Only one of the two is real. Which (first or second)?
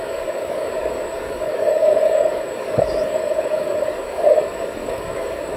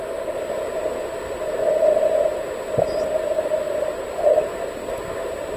second